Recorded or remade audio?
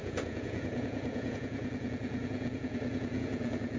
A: remade